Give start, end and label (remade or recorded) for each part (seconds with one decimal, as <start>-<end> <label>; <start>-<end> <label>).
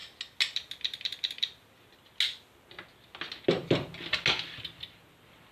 0.0-5.5 recorded